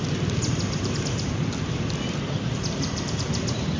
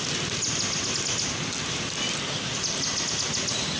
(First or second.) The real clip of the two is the second